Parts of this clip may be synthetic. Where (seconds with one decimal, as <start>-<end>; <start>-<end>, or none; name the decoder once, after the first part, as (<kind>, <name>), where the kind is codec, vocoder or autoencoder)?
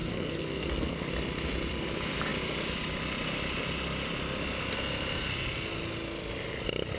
0.0-1.1 (codec, SNAC)